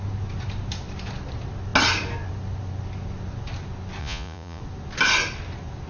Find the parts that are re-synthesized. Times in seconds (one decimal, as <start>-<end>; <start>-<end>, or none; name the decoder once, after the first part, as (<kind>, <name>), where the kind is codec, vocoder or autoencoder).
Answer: 4.0-4.6 (vocoder, Vocos)